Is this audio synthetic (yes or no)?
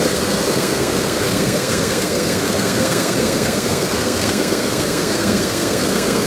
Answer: yes